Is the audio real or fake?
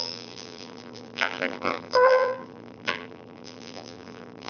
fake